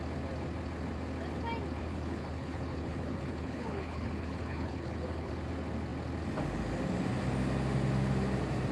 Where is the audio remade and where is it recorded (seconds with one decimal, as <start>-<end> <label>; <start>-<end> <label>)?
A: 0.0-1.9 recorded; 1.9-5.3 remade; 5.3-8.7 recorded